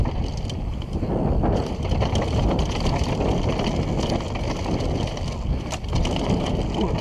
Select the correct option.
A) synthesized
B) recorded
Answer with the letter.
B